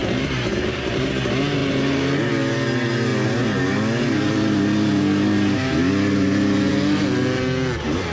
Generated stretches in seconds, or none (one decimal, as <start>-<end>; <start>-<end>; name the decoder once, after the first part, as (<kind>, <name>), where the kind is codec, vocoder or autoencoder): 0.0-1.0 (vocoder, BigVGAN v2)